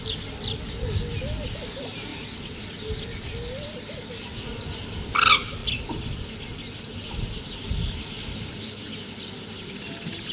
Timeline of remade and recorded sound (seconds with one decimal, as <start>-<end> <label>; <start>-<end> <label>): 0.0-10.3 recorded